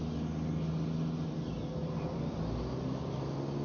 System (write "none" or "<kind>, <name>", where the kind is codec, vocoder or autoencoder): none